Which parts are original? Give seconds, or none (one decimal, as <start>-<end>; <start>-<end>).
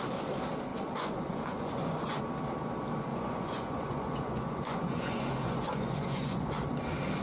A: 0.0-0.7; 2.2-3.1; 6.5-7.2